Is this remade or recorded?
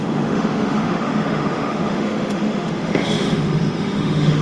remade